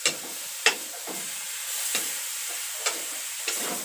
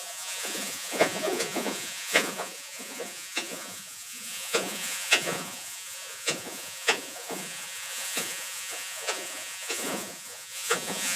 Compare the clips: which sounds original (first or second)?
first